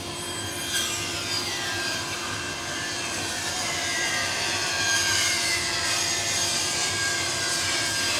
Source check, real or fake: fake